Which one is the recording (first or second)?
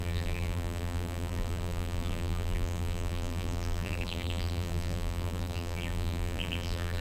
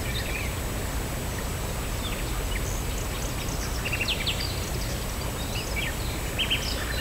second